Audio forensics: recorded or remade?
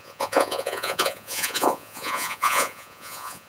remade